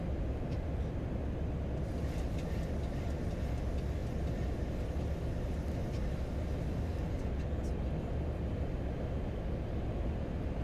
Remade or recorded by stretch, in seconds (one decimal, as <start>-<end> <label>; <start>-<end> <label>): 0.0-10.6 recorded